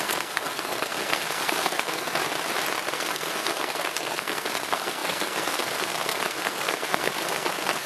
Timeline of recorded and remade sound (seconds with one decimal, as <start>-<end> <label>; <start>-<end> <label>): 0.0-2.2 remade; 2.2-2.9 recorded; 2.9-7.9 remade